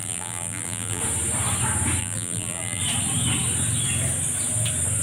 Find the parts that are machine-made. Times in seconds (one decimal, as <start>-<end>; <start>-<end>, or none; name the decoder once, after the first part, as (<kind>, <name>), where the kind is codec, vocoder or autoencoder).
0.0-1.0 (vocoder, BigVGAN v2); 2.0-2.8

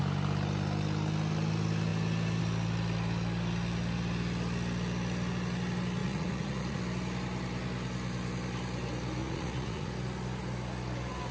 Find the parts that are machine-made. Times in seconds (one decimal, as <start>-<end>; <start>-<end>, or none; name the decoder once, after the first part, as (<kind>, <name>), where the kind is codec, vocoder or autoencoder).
6.0-6.8 (vocoder, Vocos); 9.2-9.9

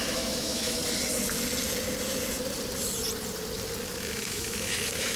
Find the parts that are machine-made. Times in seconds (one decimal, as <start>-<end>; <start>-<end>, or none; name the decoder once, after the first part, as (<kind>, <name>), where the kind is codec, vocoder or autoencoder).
0.0-0.8 (autoencoder, DAC-VAE); 3.9-5.2

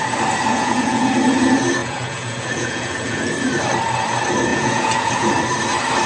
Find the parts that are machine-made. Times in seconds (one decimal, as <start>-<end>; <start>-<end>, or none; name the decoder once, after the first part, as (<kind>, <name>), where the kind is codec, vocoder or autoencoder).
0.5-1.1 (vocoder, Vocos); 1.8-3.3; 4.5-5.3

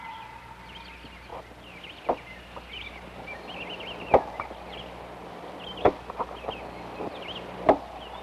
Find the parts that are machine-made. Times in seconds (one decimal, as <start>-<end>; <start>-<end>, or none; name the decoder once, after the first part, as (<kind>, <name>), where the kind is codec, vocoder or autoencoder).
none

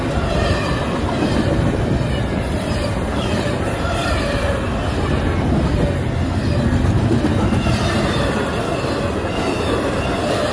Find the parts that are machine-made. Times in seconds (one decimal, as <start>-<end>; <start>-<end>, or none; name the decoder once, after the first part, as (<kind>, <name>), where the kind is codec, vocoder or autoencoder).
4.0-4.7 (vocoder, BigVGAN v2)

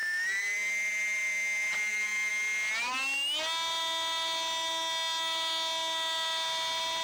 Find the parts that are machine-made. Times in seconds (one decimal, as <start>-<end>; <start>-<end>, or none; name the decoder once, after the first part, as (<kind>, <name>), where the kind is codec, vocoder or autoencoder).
0.0-2.3 (vocoder, BigVGAN v2)